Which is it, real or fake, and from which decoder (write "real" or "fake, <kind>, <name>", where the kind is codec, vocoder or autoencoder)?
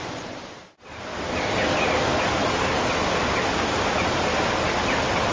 real